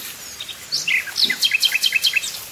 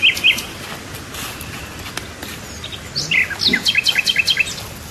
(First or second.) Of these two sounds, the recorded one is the second